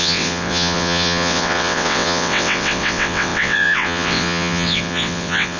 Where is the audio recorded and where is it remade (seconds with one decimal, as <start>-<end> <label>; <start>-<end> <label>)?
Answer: 0.0-5.6 remade